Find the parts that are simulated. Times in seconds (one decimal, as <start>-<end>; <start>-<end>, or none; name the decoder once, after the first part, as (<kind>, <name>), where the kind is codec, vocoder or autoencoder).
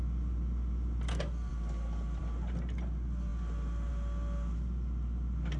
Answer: none